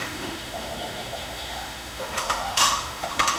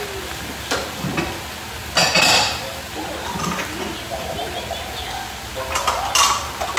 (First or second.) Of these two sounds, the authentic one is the second